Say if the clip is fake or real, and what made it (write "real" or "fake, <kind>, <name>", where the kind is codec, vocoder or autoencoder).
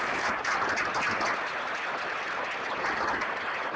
real